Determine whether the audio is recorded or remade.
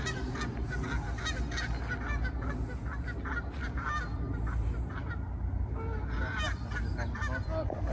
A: recorded